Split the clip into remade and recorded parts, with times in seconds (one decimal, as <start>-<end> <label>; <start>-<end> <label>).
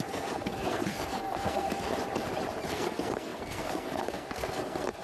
0.0-1.9 remade; 1.9-2.7 recorded; 2.7-5.0 remade